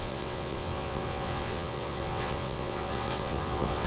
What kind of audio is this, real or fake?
fake